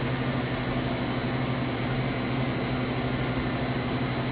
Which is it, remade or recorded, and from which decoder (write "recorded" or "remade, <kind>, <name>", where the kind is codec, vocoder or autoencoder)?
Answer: recorded